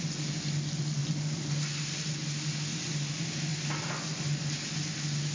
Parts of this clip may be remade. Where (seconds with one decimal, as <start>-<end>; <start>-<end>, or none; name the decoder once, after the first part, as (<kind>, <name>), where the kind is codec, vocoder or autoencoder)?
none